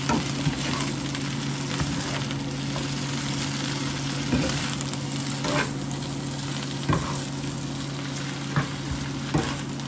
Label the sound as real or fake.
real